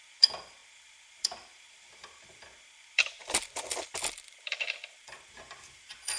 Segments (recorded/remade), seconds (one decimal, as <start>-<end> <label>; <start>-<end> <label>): 0.0-6.2 remade